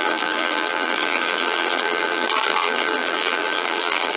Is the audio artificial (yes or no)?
yes